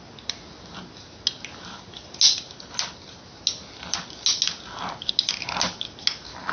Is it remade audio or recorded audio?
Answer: recorded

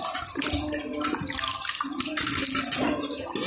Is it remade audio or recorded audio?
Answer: recorded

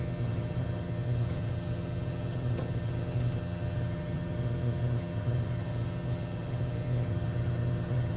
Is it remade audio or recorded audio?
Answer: remade